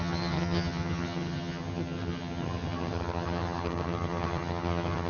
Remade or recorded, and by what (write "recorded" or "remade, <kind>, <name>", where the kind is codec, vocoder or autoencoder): remade, vocoder, HiFi-GAN